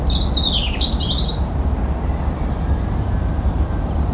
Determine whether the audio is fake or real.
real